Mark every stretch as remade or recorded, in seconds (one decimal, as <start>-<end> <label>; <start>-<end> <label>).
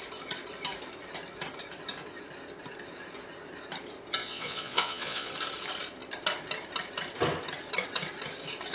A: 0.0-4.2 recorded; 4.2-5.3 remade; 5.3-8.7 recorded